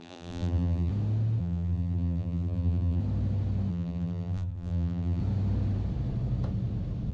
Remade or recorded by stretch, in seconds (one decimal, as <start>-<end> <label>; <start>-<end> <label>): 0.0-0.9 remade; 0.9-1.4 recorded; 1.4-3.0 remade; 3.0-3.7 recorded; 3.7-5.2 remade; 5.2-7.1 recorded